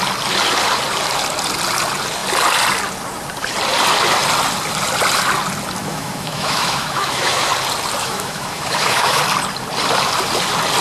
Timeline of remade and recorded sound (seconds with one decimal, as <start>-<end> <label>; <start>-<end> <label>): 0.0-5.9 recorded; 5.9-7.5 remade; 7.5-8.0 recorded; 8.0-9.2 remade; 9.2-10.8 recorded